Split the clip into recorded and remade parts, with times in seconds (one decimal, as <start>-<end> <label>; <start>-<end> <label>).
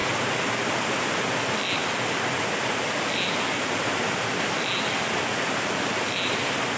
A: 0.0-6.8 recorded